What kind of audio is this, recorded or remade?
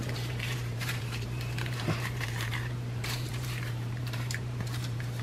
remade